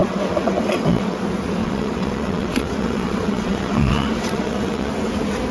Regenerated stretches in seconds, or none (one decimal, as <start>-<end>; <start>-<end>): 0.0-1.2; 1.6-4.9